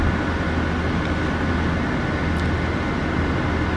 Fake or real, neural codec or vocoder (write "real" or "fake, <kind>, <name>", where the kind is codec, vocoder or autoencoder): real